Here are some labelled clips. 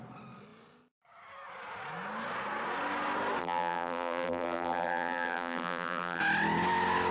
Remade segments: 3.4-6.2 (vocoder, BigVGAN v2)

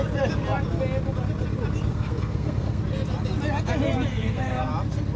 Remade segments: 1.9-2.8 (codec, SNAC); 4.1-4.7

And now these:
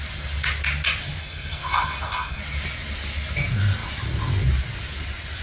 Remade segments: 1.2-2.4 (codec, SNAC)

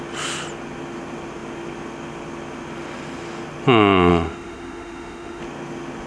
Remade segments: 4.1-5.4 (autoencoder, DAC-VAE)